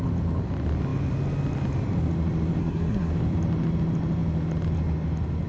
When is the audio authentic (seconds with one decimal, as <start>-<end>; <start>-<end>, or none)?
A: 0.0-2.6; 3.1-5.5